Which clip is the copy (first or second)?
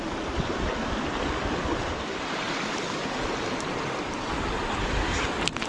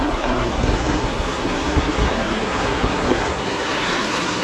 second